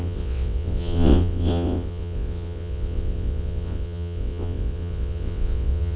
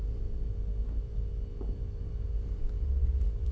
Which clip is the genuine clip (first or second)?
second